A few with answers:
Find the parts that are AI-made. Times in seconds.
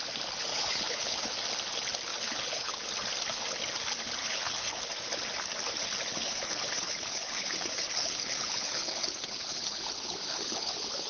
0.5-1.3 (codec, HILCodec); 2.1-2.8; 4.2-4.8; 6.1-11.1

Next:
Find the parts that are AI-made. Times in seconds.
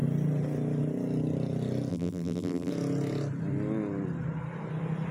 1.9-2.7 (vocoder, BigVGAN v2)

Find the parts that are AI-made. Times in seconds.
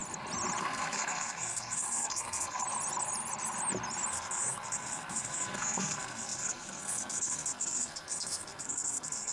0.6-2.6 (codec, SNAC); 4.1-9.3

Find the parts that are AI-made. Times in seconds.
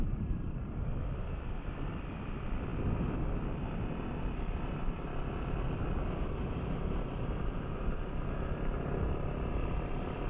none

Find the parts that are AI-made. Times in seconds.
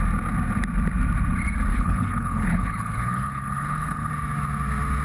1.7-4.1 (codec, HILCodec)